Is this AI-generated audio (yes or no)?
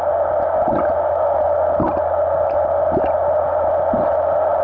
no